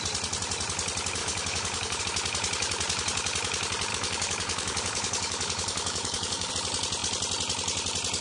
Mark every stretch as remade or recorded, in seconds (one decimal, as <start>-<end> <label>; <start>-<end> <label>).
0.0-1.2 recorded; 1.2-2.0 remade; 2.0-3.9 recorded; 3.9-6.5 remade; 6.5-8.2 recorded